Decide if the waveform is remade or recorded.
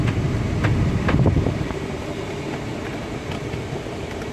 recorded